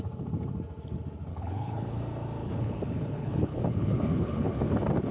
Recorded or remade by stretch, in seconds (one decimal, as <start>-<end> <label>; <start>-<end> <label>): 0.0-1.3 recorded; 1.3-2.0 remade; 2.0-2.4 recorded; 2.4-4.6 remade; 4.6-5.1 recorded